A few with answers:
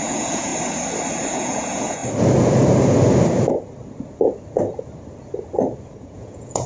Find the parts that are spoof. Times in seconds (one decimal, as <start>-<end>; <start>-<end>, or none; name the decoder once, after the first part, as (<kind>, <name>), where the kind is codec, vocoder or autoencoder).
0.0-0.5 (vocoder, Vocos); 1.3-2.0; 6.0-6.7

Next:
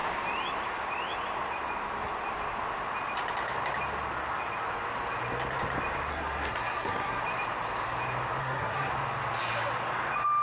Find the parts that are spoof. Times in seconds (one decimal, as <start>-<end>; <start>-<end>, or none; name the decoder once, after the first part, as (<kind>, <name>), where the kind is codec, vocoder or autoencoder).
6.1-7.2 (codec, SNAC); 8.4-8.9

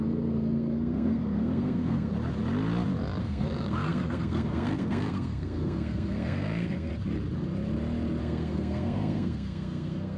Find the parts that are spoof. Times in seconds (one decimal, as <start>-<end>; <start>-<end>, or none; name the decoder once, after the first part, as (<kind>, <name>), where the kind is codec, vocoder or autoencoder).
0.0-2.1 (codec, SNAC); 3.2-6.9; 8.2-10.2